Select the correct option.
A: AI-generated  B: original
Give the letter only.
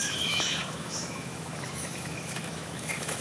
A